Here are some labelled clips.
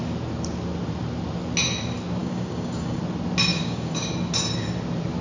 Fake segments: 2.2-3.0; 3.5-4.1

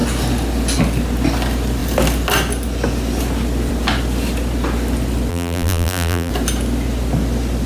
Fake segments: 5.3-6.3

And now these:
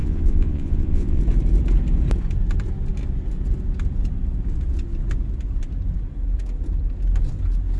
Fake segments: 0.0-1.2

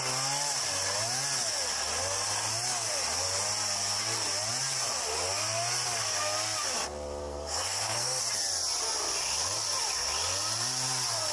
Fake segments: 7.2-8.2

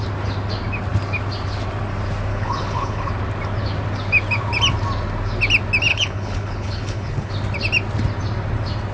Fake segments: 2.3-3.1; 5.9-7.3